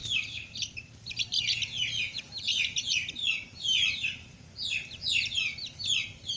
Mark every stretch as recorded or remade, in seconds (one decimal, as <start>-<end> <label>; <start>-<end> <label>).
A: 0.0-2.1 recorded; 2.1-4.3 remade; 4.3-6.0 recorded; 6.0-6.4 remade